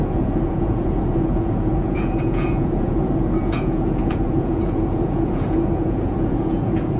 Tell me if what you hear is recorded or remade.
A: remade